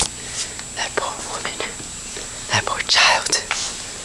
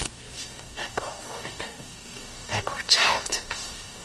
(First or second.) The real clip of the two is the first